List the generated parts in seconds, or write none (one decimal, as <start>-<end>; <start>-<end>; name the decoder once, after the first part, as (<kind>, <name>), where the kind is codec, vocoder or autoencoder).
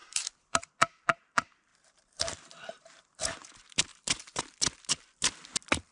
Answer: 0.0-0.7 (vocoder, BigVGAN v2); 1.7-3.0; 3.9-4.4